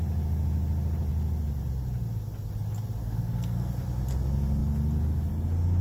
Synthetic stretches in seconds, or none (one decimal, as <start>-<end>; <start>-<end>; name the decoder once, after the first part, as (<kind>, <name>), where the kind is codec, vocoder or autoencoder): 3.0-3.7 (codec, SNAC)

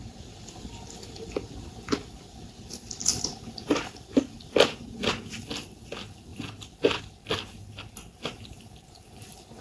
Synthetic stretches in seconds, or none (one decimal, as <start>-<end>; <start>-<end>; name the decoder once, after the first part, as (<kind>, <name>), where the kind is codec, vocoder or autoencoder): none

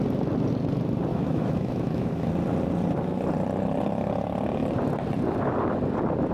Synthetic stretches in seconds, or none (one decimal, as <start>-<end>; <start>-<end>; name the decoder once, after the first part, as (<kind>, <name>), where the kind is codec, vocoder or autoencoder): 1.1-2.3 (autoencoder, DAC-VAE)